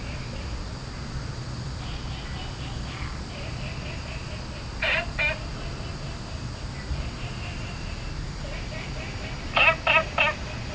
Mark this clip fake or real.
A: real